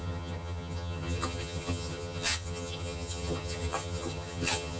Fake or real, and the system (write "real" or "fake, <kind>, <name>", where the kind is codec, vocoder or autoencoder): fake, vocoder, HiFi-GAN